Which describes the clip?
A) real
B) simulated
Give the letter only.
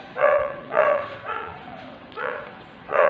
B